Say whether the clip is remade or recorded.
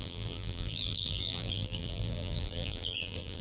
remade